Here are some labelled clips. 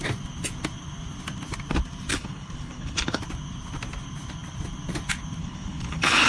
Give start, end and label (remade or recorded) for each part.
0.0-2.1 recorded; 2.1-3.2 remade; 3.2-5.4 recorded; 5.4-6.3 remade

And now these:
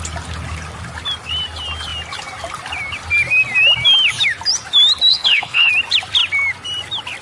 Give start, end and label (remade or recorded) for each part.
0.0-5.1 recorded; 5.1-5.7 remade; 5.7-7.2 recorded

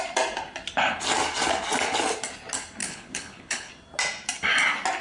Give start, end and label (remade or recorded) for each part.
0.0-2.8 recorded; 2.8-3.7 remade; 3.7-5.0 recorded

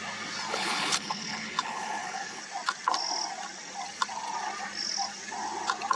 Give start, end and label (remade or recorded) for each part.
0.0-0.5 recorded; 0.5-2.4 remade; 2.4-6.0 recorded

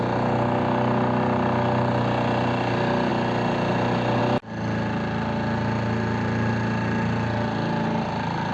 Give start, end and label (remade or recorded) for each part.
0.0-8.5 recorded

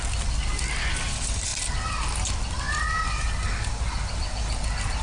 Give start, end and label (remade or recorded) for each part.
0.0-5.0 recorded

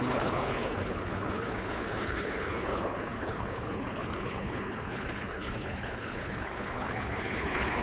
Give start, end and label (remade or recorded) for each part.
0.0-7.8 remade

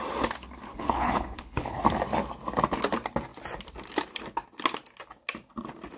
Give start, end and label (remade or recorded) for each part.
0.0-0.7 recorded; 0.7-1.8 remade; 1.8-6.0 recorded